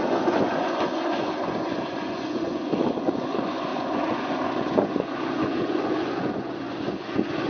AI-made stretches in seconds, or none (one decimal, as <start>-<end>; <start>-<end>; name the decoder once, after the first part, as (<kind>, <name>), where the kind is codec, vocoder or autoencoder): 0.0-7.5 (vocoder, Vocos)